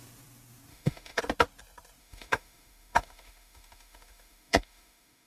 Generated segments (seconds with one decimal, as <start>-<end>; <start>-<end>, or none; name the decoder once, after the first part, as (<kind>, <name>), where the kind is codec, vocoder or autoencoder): 0.7-1.2 (autoencoder, DAC-VAE); 2.0-5.3